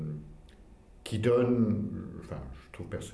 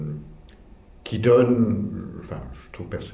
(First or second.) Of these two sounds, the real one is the first